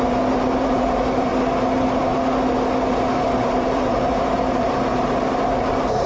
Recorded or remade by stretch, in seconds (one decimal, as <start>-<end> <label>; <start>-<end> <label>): 0.0-1.3 remade; 1.3-3.4 recorded; 3.4-6.1 remade